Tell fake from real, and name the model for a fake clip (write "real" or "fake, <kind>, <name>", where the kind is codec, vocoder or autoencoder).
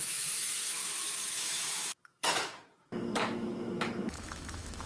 fake, autoencoder, DAC-VAE